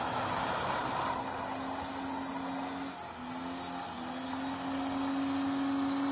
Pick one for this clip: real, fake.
real